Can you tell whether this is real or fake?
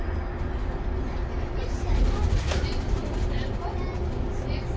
real